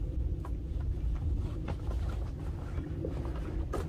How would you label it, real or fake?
real